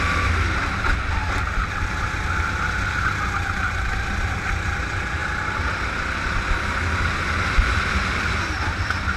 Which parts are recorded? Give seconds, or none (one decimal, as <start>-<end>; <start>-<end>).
0.0-9.2